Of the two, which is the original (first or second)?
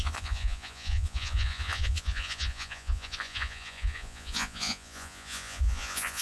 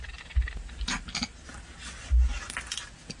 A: second